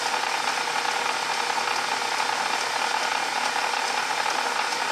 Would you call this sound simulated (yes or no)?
no